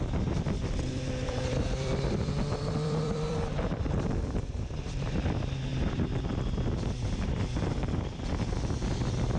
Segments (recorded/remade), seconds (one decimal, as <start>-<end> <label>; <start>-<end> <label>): 0.0-9.4 remade